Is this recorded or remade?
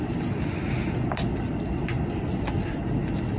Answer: recorded